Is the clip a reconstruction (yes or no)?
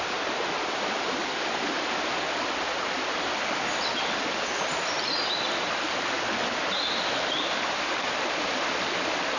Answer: no